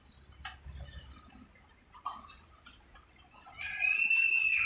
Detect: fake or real real